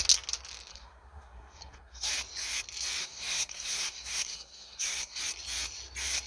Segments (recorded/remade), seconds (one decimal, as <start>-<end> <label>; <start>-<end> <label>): 0.0-0.7 recorded; 0.7-2.1 remade; 2.1-3.0 recorded; 3.0-5.2 remade; 5.2-6.3 recorded